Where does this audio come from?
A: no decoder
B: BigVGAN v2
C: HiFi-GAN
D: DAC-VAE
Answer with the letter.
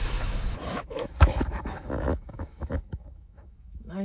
D